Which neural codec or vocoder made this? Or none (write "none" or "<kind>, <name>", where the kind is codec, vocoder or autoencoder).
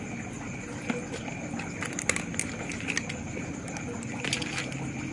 none